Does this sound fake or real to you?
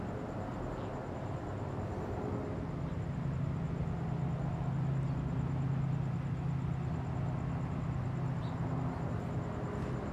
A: real